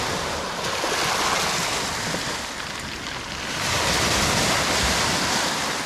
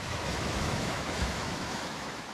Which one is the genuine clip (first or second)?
first